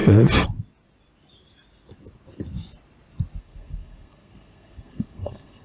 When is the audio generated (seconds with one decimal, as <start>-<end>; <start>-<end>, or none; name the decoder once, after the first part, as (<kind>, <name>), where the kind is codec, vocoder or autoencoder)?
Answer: 3.4-5.6 (codec, SNAC)